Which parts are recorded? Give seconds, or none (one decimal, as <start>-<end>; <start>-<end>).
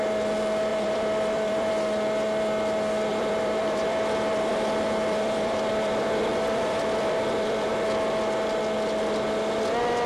0.0-0.7; 1.7-3.1; 7.7-10.1